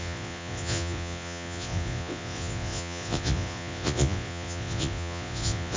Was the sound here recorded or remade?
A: remade